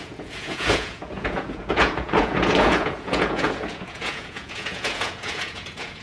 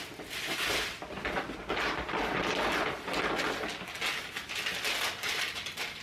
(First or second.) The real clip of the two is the second